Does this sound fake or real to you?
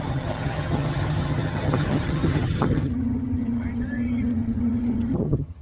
fake